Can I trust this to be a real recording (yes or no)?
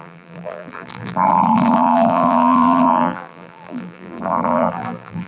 no